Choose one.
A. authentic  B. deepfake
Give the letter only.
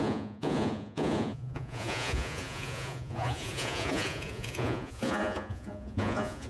B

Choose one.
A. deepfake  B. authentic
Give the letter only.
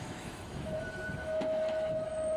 A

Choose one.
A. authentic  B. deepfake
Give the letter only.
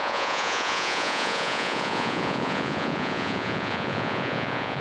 B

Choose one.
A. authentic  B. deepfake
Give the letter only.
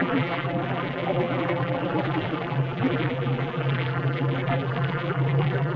B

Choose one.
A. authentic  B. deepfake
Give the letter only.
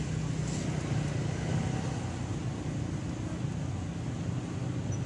A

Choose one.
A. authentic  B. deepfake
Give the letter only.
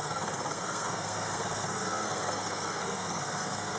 B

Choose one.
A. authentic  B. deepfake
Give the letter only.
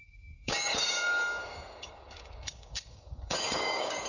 B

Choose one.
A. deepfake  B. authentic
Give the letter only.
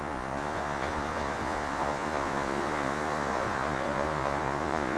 A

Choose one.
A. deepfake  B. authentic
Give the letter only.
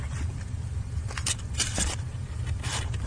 A